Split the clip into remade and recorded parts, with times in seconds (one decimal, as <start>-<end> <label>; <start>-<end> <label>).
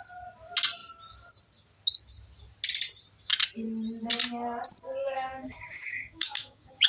0.0-5.0 recorded; 5.0-6.9 remade